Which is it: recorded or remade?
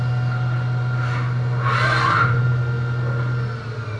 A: recorded